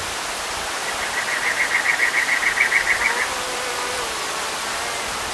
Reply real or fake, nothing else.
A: real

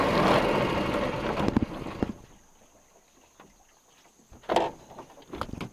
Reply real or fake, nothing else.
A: real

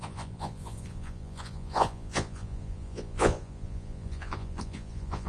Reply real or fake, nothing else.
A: fake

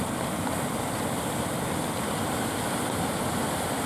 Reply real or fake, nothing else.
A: real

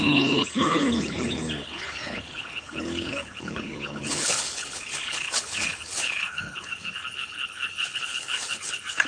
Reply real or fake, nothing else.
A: fake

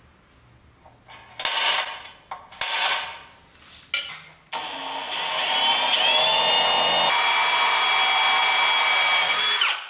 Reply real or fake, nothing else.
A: real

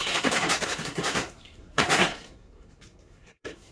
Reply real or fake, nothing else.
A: fake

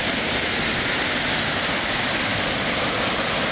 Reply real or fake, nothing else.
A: real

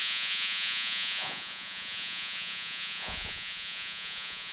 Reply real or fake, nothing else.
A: fake